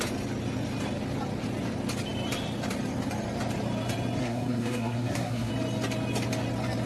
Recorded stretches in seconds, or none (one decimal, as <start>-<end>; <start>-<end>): 0.0-4.2; 5.5-6.9

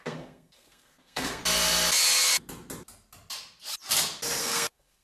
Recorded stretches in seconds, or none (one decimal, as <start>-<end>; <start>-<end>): 1.4-4.4

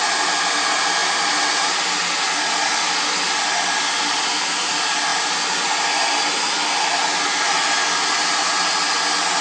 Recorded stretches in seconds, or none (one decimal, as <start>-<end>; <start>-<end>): 0.0-9.4

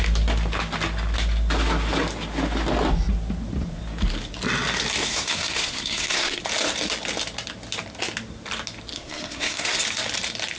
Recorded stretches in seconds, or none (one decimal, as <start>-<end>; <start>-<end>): 0.0-5.0; 6.4-8.9; 9.8-10.6

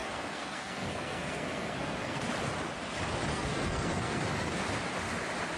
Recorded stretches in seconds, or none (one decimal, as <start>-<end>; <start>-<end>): 2.2-3.3; 4.6-5.6

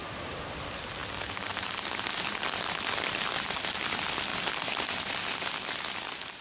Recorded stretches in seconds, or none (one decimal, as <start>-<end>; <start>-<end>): 0.0-6.4

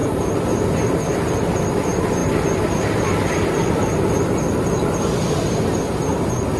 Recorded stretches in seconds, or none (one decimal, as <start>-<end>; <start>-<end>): 0.0-6.6

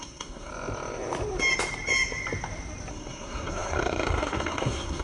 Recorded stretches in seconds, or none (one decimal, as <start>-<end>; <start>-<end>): 0.5-2.9